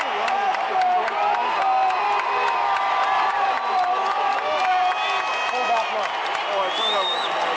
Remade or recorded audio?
recorded